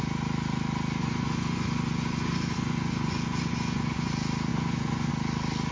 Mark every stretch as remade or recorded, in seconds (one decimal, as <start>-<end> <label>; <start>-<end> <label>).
0.0-1.0 recorded; 1.0-4.1 remade; 4.1-4.5 recorded; 4.5-5.1 remade; 5.1-5.7 recorded